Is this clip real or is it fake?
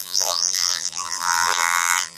fake